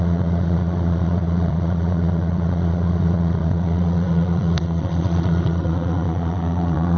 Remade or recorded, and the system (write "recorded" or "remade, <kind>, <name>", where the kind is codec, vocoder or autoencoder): remade, vocoder, Vocos